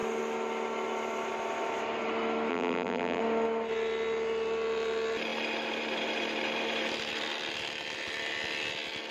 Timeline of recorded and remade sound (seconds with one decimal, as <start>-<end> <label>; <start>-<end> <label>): 0.0-2.5 recorded; 2.5-3.2 remade; 3.2-9.1 recorded